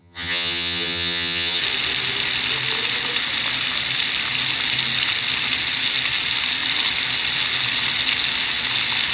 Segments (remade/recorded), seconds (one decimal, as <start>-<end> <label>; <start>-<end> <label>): 0.0-1.6 remade; 1.6-9.1 recorded